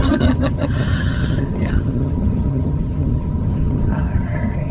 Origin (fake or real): fake